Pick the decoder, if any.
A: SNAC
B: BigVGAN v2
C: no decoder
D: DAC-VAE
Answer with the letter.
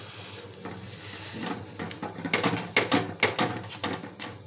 C